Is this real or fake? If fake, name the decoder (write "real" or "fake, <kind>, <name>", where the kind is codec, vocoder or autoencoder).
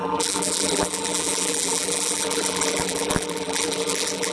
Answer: fake, vocoder, BigVGAN v2